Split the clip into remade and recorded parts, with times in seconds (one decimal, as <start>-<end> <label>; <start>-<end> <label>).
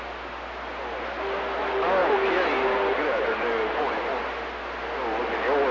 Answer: 0.0-2.0 recorded; 2.0-4.2 remade; 4.2-5.7 recorded